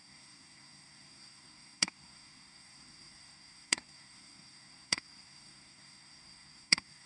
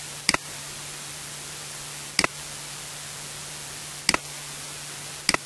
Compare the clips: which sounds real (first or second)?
second